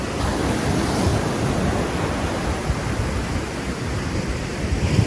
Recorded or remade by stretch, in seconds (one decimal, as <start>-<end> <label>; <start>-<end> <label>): 0.0-1.1 remade; 1.1-4.2 recorded; 4.2-5.1 remade